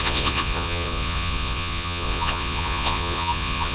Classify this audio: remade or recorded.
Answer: remade